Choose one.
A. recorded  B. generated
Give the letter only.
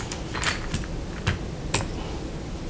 A